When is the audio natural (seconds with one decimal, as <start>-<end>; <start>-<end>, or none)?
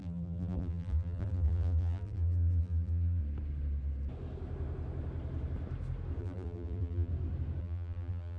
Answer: 3.2-6.2; 7.1-7.6